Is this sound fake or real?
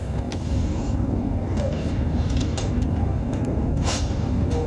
fake